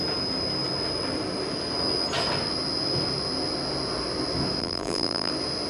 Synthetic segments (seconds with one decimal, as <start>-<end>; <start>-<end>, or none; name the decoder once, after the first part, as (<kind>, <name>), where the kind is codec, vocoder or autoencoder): 4.6-5.3 (vocoder, BigVGAN v2)